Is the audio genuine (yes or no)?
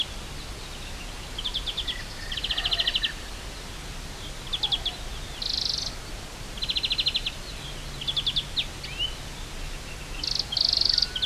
yes